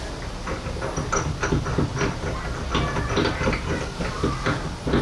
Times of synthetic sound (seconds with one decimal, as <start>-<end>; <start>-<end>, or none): none